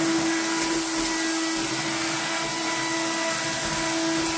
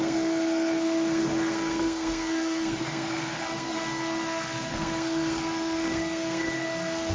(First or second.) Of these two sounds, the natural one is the first